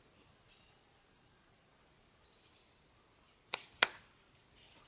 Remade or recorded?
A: recorded